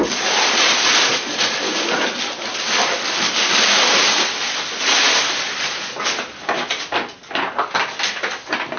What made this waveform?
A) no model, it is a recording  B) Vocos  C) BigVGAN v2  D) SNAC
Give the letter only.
A